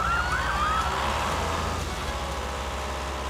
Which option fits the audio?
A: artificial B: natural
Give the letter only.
B